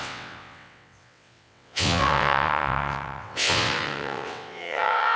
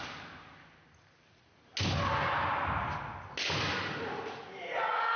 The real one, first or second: second